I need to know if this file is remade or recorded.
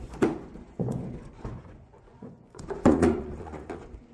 remade